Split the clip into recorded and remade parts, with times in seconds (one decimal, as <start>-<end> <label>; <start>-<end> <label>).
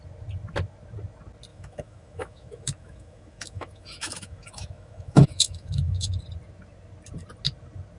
0.0-1.5 recorded; 1.5-6.2 remade; 6.2-8.0 recorded